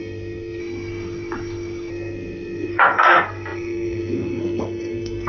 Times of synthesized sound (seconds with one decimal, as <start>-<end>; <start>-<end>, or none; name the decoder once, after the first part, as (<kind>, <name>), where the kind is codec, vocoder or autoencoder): 0.0-0.6 (codec, SNAC); 1.9-5.3